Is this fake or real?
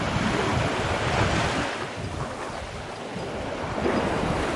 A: real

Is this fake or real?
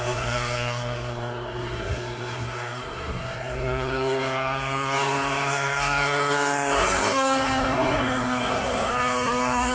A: fake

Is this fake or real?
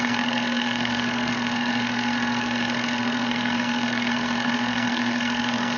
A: fake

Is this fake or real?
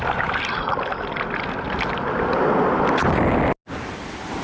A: real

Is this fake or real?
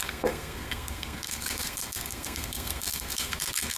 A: fake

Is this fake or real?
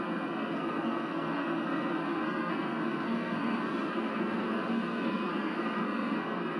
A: fake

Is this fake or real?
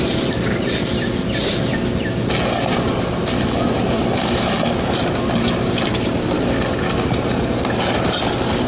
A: real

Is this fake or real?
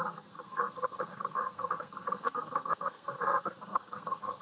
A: fake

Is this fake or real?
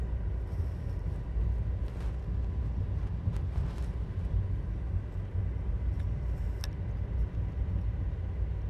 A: real